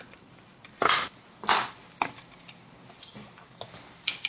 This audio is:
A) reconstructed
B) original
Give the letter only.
B